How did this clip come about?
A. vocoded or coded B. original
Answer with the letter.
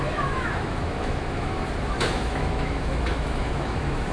A